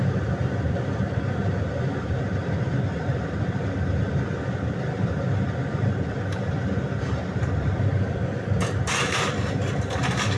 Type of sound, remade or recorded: remade